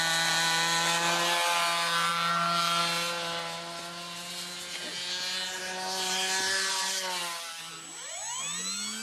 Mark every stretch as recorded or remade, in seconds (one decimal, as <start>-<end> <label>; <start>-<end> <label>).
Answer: 0.0-9.0 recorded